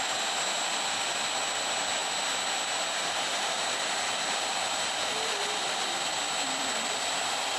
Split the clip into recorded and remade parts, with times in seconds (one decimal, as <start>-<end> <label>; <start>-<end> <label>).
0.0-7.6 recorded